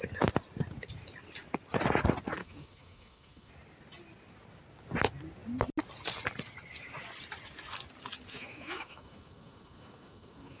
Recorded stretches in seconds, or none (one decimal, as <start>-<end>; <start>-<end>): 0.0-2.4; 3.5-8.3